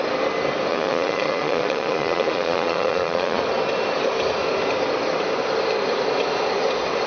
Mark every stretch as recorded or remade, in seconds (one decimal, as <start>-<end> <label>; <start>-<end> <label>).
0.0-0.7 recorded; 0.7-3.4 remade; 3.4-7.1 recorded